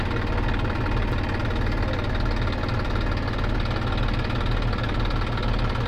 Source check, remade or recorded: recorded